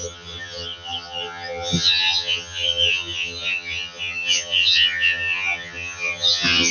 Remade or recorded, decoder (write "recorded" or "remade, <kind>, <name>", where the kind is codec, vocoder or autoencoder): remade, vocoder, HiFi-GAN